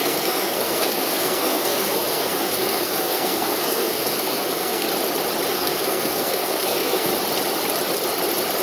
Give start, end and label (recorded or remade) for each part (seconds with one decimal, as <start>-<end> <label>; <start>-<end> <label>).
0.0-4.9 remade; 4.9-5.5 recorded; 5.5-7.1 remade; 7.1-8.6 recorded